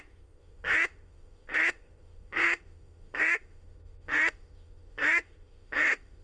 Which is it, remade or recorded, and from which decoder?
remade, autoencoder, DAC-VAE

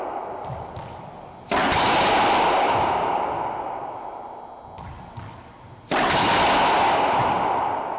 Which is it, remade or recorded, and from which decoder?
recorded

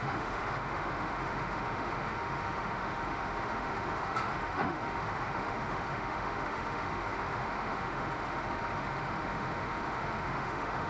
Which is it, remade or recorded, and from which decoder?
remade, autoencoder, DAC-VAE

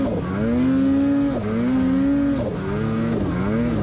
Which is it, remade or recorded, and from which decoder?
recorded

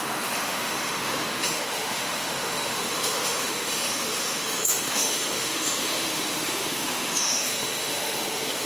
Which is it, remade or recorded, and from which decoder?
remade, autoencoder, DAC-VAE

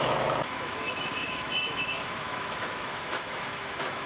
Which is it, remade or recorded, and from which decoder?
remade, autoencoder, DAC-VAE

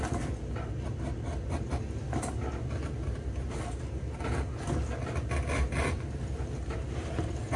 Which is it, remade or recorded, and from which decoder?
recorded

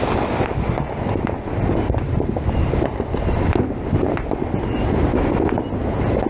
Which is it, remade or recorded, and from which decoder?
recorded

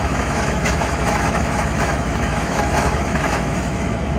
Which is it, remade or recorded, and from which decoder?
remade, autoencoder, DAC-VAE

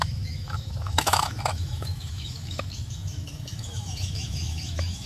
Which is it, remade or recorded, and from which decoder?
remade, autoencoder, DAC-VAE